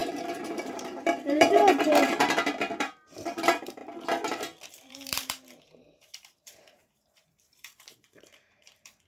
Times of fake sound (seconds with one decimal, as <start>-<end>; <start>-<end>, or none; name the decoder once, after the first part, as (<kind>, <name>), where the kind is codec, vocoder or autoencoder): 0.0-3.8 (vocoder, BigVGAN v2); 4.7-9.1